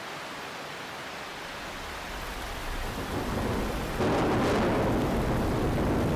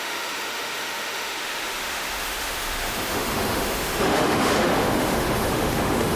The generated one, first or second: second